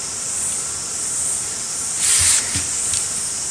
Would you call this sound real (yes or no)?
yes